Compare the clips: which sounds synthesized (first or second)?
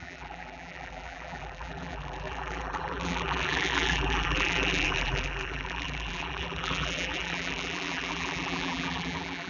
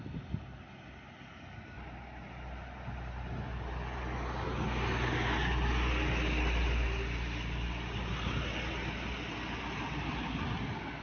first